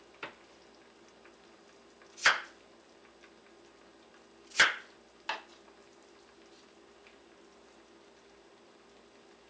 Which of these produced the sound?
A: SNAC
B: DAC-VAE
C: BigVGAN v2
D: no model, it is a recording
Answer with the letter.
D